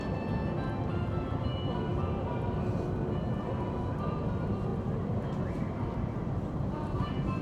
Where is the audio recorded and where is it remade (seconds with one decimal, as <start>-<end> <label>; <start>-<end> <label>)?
0.0-0.4 remade; 0.4-0.9 recorded; 0.9-1.9 remade; 1.9-3.0 recorded; 3.0-7.4 remade